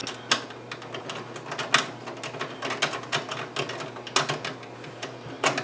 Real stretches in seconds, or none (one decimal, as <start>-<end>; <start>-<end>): 0.0-5.6